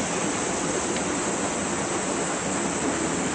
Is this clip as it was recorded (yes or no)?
yes